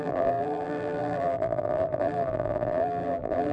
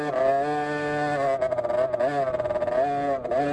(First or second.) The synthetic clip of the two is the first